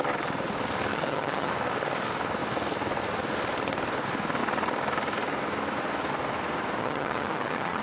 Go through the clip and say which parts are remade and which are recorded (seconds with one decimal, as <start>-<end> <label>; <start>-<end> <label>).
0.0-0.9 recorded; 0.9-1.5 remade; 1.5-6.8 recorded; 6.8-7.8 remade